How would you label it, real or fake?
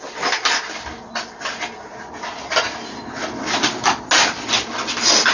real